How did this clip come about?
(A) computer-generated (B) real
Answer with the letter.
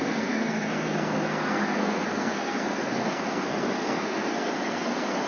A